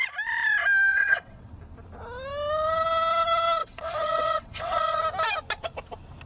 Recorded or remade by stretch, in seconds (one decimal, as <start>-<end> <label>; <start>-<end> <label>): 0.0-0.9 recorded; 0.9-1.5 remade; 1.5-3.6 recorded; 3.6-5.0 remade; 5.0-6.3 recorded